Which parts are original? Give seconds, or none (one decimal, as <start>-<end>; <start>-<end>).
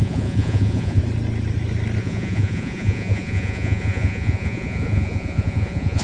1.0-2.0